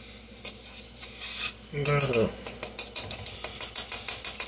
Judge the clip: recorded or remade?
recorded